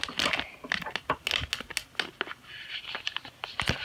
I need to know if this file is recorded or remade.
recorded